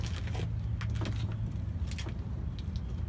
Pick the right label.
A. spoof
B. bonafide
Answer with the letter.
B